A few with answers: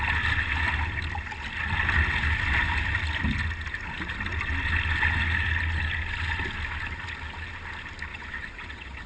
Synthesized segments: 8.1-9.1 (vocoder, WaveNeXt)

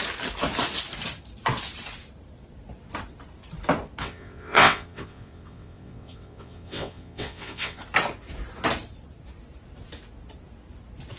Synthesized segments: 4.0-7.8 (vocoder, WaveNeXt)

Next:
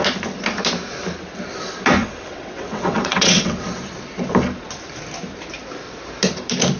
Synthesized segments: 2.0-3.8 (vocoder, WaveNeXt)

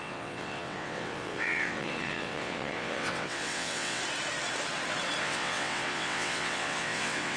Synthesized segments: 0.0-4.0 (vocoder, WaveNeXt); 5.2-7.4